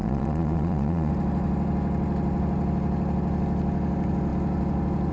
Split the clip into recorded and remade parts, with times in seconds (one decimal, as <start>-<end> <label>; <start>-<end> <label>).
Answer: 0.0-1.1 remade; 1.1-5.1 recorded